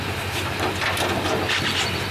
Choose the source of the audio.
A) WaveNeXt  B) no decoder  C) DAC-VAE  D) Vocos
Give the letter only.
B